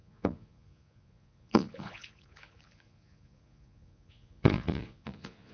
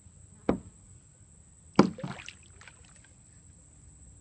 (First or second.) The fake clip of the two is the first